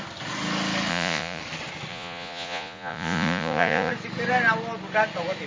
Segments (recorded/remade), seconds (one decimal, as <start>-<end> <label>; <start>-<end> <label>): 0.0-0.9 recorded; 0.9-1.4 remade; 1.4-1.9 recorded; 1.9-3.9 remade; 3.9-5.5 recorded